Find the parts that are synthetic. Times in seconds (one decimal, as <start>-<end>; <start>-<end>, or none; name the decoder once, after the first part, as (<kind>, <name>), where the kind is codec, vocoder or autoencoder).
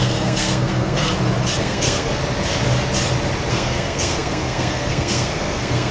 0.0-1.1 (codec, SNAC); 1.6-2.2; 3.5-5.9